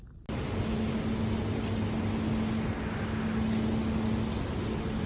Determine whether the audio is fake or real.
real